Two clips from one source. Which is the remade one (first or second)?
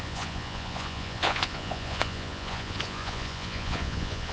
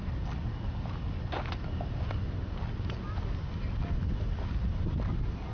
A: first